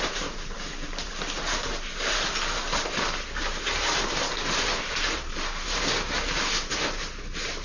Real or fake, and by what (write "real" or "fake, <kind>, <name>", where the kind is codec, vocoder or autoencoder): fake, vocoder, BigVGAN v2